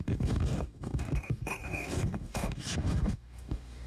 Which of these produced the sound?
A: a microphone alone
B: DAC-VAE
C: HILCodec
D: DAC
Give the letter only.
D